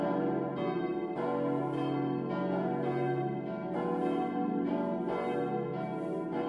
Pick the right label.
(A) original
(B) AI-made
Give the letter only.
A